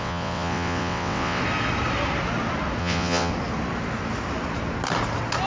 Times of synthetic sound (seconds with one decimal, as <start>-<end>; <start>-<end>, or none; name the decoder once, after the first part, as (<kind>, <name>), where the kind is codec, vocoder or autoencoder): 0.0-1.4 (vocoder, WaveNeXt); 2.8-3.3